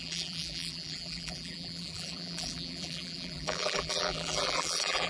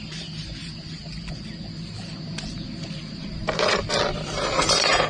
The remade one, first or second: first